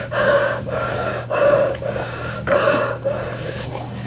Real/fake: fake